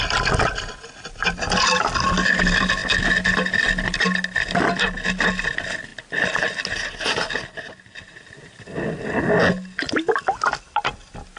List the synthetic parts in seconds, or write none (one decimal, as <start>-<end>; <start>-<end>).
none